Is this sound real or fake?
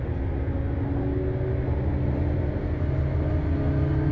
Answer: real